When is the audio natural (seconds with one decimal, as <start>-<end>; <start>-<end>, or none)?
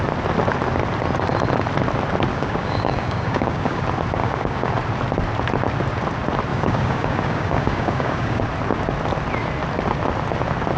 0.0-2.3; 3.8-4.2; 4.7-6.5; 8.4-10.8